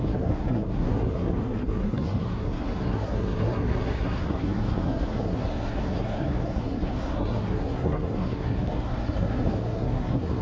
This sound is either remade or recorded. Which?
remade